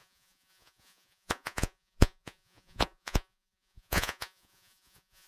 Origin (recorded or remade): remade